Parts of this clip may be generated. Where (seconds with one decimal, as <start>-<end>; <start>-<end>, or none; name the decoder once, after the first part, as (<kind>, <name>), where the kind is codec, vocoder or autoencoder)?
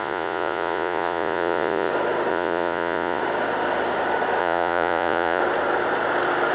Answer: 0.0-1.9 (vocoder, Vocos); 2.3-3.2; 4.4-5.4